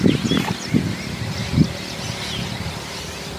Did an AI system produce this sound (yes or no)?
no